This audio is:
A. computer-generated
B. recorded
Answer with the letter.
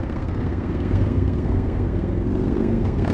A